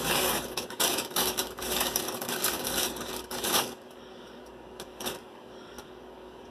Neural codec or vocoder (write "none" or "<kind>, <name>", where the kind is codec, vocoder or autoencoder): codec, DAC